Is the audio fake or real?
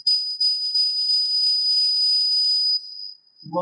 real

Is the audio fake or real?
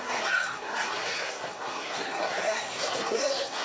fake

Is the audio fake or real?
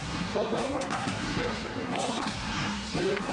fake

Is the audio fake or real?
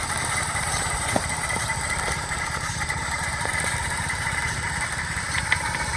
fake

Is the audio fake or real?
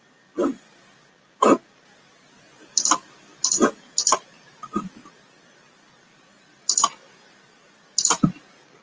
real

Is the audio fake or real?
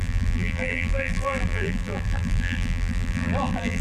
fake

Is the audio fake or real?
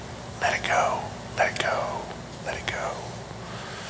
real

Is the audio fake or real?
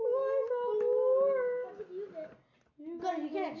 real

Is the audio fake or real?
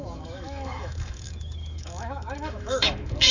fake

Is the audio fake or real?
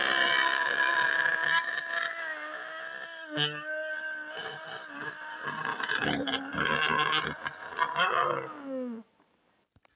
real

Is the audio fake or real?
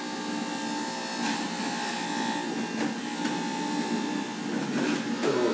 real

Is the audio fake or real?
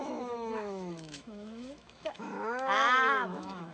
fake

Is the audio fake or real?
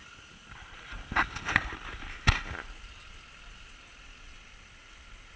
real